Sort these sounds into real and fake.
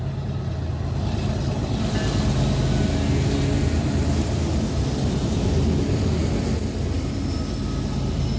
real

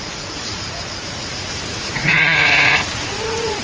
fake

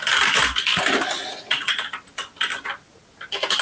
real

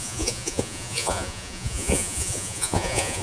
fake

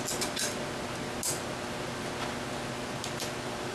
real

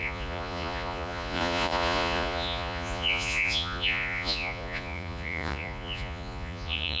fake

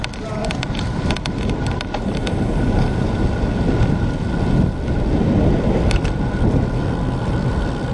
real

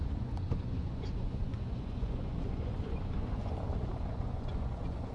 fake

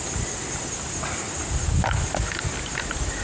real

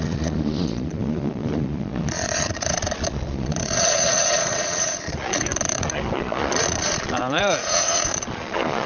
fake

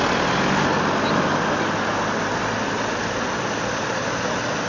real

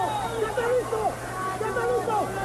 real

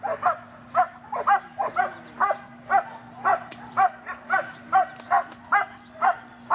real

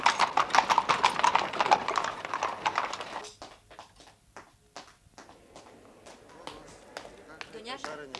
real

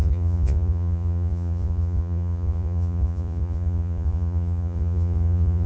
fake